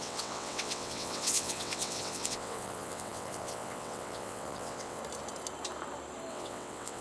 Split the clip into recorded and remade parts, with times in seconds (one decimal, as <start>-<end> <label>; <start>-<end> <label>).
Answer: 0.0-5.0 remade; 5.0-6.3 recorded; 6.3-7.0 remade